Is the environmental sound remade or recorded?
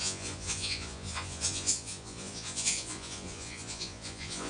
remade